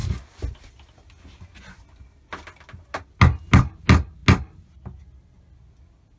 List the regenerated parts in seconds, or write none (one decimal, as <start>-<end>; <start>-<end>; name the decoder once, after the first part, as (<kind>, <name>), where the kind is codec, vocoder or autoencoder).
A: none

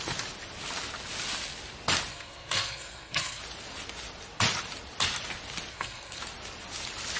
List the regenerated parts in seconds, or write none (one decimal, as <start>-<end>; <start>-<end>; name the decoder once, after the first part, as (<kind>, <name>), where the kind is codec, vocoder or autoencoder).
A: 2.1-3.4 (codec, SNAC); 5.7-6.2

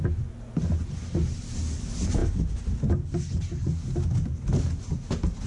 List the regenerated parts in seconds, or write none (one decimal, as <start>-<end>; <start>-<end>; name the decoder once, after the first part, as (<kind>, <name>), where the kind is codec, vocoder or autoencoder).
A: none

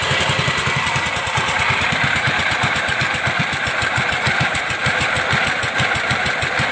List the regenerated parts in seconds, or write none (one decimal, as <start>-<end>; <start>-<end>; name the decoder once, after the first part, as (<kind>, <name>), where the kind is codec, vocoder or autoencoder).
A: none